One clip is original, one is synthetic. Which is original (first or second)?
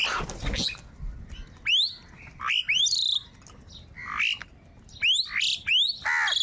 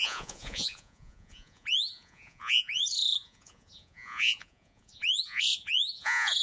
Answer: first